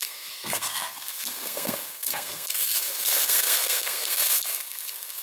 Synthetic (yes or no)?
yes